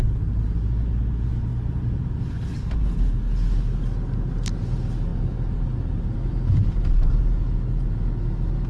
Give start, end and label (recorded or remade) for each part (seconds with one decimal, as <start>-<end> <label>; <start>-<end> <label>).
0.0-1.5 recorded; 1.5-2.3 remade; 2.3-8.7 recorded